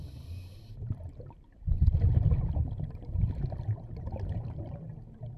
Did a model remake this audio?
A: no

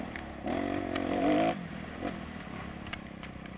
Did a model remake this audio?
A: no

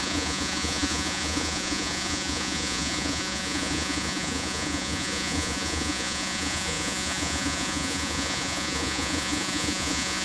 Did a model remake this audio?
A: yes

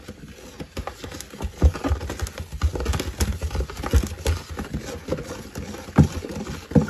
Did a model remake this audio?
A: no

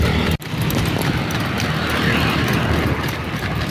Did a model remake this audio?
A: no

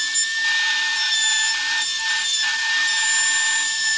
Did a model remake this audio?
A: no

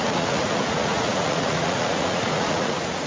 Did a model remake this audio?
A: yes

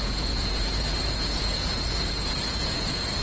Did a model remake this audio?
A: yes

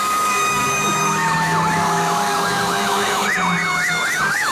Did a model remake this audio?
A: yes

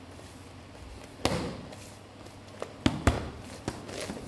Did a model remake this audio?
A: no